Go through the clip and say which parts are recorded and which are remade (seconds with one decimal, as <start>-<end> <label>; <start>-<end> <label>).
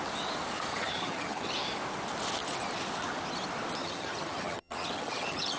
0.0-0.7 recorded; 0.7-1.5 remade; 1.5-3.8 recorded; 3.8-5.6 remade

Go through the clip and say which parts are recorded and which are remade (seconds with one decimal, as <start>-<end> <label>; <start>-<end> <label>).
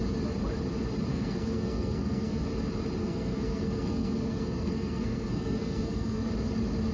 0.0-1.1 recorded; 1.1-2.4 remade; 2.4-3.0 recorded; 3.0-6.3 remade; 6.3-6.9 recorded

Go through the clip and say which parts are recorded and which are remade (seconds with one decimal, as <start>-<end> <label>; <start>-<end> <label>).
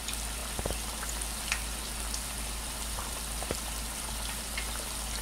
0.0-5.2 recorded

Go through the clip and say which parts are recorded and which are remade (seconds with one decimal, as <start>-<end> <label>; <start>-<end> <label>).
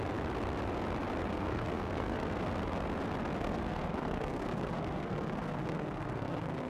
0.0-1.3 recorded; 1.3-2.4 remade; 2.4-3.4 recorded; 3.4-6.7 remade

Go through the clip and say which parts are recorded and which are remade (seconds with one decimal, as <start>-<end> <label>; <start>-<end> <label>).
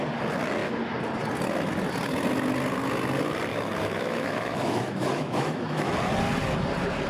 0.0-3.5 recorded; 3.5-5.9 remade; 5.9-7.1 recorded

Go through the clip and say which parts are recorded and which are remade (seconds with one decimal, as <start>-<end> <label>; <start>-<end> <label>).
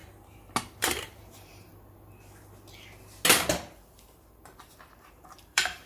0.0-0.6 recorded; 0.6-1.7 remade; 1.7-3.7 recorded; 3.7-5.9 remade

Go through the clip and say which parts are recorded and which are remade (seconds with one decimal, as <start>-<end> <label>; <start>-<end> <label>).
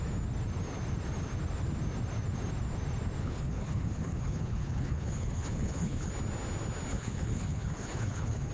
0.0-3.2 recorded; 3.2-6.1 remade; 6.1-6.9 recorded; 6.9-8.5 remade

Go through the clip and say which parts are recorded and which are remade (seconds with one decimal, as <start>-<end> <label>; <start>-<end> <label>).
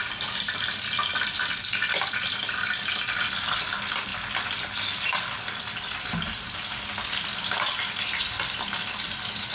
0.0-9.5 recorded